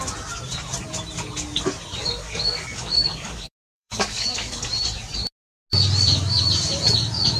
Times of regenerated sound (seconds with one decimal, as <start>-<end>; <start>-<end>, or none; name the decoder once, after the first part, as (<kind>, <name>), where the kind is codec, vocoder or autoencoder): 2.0-4.7 (codec, DAC)

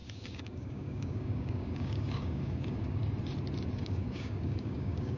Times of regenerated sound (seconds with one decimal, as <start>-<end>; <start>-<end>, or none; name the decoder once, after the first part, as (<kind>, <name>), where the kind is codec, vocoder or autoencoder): 0.0-3.0 (codec, DAC); 3.8-5.2

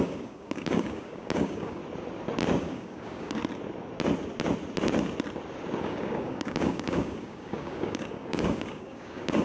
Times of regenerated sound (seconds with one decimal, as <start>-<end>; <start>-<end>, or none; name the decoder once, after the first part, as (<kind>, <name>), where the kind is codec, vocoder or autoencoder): 0.0-1.8 (codec, DAC); 2.6-3.4; 5.8-9.4

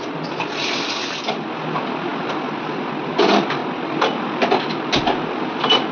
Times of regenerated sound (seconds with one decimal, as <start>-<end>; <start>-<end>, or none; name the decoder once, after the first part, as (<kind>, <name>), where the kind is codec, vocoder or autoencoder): none

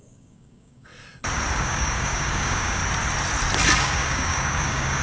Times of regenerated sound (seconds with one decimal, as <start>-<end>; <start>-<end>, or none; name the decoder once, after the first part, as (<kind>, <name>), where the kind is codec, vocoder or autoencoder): 0.0-0.9 (codec, DAC); 1.5-2.8; 3.8-5.0

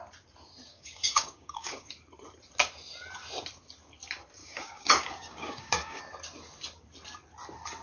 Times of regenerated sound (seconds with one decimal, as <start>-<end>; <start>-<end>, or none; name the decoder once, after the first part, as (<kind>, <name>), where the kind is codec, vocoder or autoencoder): 0.7-1.9 (codec, DAC); 4.4-6.0

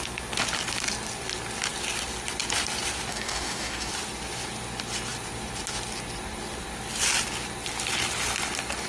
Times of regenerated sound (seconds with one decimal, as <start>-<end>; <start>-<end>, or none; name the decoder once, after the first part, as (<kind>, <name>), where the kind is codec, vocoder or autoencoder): 3.1-3.9 (codec, DAC)